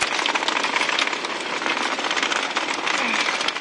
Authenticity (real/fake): real